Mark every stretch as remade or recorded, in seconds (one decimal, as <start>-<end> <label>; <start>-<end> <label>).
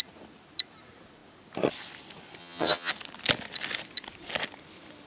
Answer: 0.0-2.4 recorded; 2.4-2.9 remade; 2.9-5.1 recorded